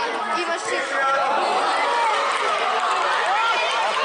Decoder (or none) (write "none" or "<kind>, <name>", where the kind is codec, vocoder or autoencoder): none